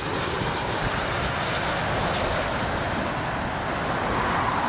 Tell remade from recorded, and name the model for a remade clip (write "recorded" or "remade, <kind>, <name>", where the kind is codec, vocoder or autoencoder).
recorded